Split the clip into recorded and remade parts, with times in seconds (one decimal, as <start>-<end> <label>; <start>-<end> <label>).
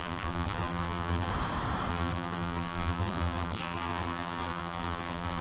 0.0-1.3 remade; 1.3-1.9 recorded; 1.9-5.4 remade